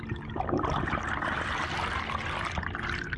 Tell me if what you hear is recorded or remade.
recorded